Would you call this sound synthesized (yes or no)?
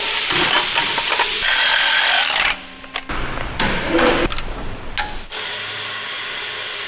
no